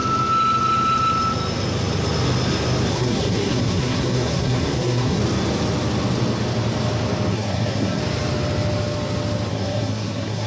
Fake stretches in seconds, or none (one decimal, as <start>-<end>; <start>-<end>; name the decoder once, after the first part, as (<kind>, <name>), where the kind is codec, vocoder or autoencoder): 2.9-5.2 (codec, SNAC); 7.3-8.0; 9.5-10.5